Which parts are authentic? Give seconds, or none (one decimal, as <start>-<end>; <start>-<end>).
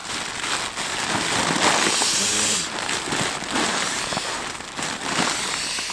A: 0.0-5.9